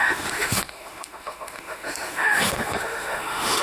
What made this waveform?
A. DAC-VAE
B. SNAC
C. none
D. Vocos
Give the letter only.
A